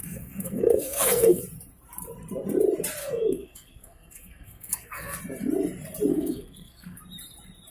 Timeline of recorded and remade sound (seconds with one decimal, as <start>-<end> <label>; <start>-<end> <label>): 0.0-1.4 remade; 1.4-3.0 recorded; 3.0-5.2 remade; 5.2-6.1 recorded; 6.1-7.0 remade; 7.0-7.7 recorded